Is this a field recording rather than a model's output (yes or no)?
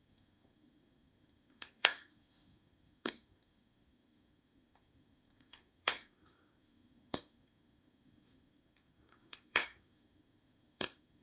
no